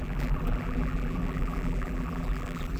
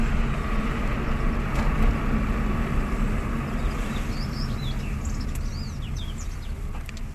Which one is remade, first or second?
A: first